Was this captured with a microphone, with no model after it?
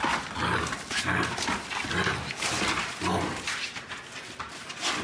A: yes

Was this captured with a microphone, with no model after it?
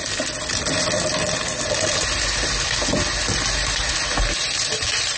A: no